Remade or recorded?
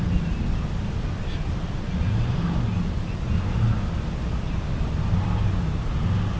recorded